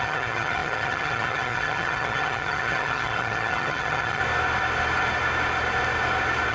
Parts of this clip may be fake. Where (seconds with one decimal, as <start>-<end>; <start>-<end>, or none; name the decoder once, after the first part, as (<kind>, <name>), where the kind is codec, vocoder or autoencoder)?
0.0-4.2 (vocoder, HiFi-GAN)